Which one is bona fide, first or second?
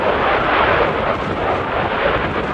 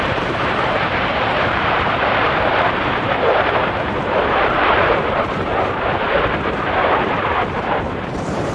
first